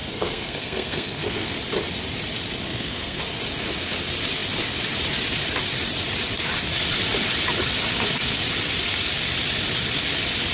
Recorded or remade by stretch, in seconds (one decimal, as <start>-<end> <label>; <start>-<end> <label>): 0.0-1.5 remade; 1.5-2.7 recorded; 2.7-3.2 remade; 3.2-10.5 recorded